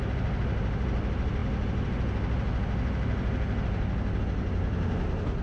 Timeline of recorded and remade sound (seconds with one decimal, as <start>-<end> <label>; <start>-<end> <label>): 0.0-5.4 recorded